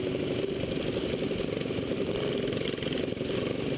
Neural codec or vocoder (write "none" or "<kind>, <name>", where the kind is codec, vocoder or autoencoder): none